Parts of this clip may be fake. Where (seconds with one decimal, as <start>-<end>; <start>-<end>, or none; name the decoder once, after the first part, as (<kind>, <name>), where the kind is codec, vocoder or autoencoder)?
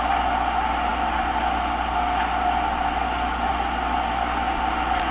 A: none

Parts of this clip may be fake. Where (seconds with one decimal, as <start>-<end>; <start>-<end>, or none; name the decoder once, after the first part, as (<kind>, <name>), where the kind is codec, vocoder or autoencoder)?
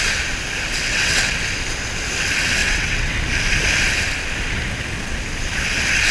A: 0.8-1.4 (vocoder, WaveNeXt); 2.6-3.2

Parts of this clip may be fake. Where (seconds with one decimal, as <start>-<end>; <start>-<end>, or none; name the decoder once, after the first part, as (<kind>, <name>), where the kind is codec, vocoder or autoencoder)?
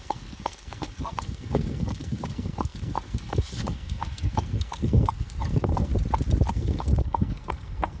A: 0.0-5.9 (codec, SNAC); 6.5-8.0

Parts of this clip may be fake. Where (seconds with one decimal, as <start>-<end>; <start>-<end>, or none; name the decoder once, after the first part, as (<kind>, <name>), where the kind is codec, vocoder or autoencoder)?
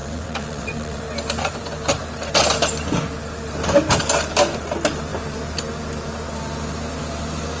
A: 0.0-1.0 (vocoder, WaveNeXt)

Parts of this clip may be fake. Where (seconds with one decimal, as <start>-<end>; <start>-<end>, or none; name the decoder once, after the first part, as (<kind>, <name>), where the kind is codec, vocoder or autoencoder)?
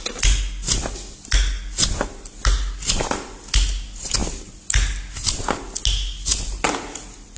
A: none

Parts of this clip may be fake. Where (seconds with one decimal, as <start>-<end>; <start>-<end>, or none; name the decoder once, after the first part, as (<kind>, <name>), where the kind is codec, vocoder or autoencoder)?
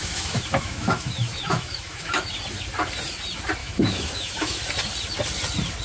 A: 0.0-2.3 (autoencoder, DAC-VAE); 3.6-4.6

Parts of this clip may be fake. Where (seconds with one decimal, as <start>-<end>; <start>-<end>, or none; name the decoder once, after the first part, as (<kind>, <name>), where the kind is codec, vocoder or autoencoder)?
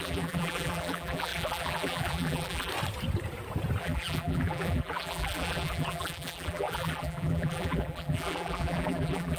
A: 0.0-2.7 (vocoder, BigVGAN v2); 3.8-9.4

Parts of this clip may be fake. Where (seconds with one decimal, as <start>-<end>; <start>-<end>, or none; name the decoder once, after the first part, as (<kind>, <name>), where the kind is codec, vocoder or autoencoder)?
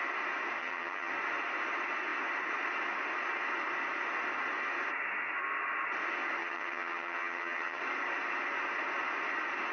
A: 0.6-1.1 (vocoder, HiFi-GAN); 6.4-7.8